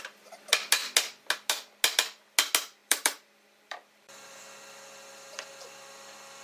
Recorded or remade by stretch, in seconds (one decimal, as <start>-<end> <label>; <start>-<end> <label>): 0.0-2.8 recorded; 2.8-4.4 remade; 4.4-6.4 recorded